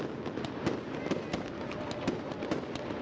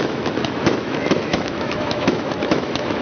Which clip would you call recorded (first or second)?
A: first